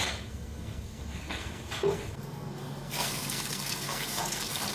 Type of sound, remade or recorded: remade